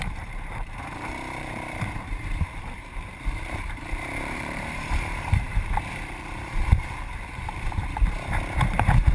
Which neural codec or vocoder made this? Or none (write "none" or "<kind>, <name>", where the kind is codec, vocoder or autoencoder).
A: vocoder, BigVGAN v2